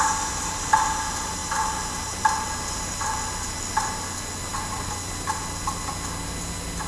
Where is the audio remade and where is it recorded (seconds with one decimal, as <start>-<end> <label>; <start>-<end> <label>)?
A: 0.0-6.9 recorded